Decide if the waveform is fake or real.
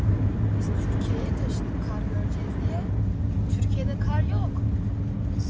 real